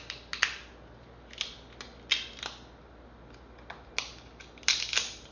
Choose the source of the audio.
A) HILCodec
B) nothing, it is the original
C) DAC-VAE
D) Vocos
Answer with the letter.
B